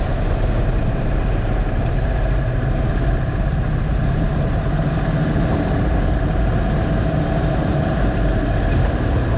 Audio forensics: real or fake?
fake